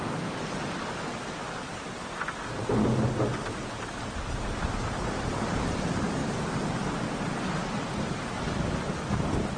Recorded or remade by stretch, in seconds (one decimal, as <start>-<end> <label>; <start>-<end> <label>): 0.0-0.7 recorded; 0.7-2.7 remade; 2.7-3.5 recorded; 3.5-6.2 remade; 6.2-9.2 recorded; 9.2-9.6 remade